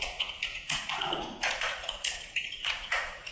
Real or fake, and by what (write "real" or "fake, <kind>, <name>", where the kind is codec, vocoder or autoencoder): fake, vocoder, Vocos